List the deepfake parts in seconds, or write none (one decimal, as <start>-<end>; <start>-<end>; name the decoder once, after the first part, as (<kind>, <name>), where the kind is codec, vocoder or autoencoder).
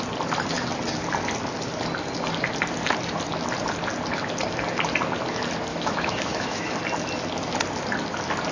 5.7-6.8 (autoencoder, DAC-VAE)